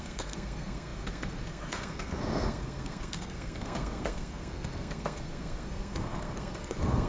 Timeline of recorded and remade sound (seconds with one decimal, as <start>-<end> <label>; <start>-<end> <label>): 0.0-7.1 remade